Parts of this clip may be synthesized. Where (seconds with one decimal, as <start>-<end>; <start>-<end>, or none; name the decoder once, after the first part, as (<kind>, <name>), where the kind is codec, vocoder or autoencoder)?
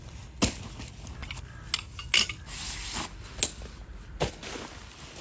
none